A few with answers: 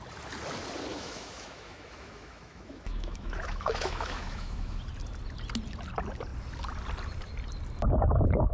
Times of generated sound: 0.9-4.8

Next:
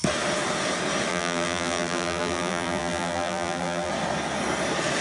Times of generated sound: 1.1-3.9

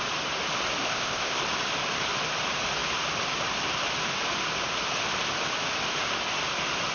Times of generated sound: 0.8-1.4

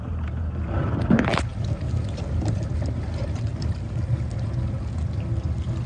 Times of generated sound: none

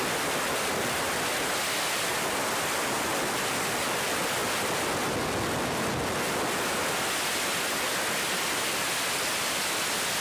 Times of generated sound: none

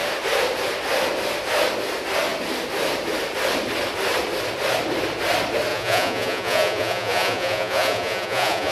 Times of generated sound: 5.7-8.7